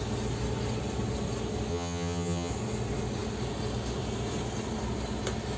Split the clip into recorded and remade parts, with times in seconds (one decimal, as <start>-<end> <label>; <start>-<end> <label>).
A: 0.0-1.7 recorded; 1.7-2.5 remade; 2.5-5.6 recorded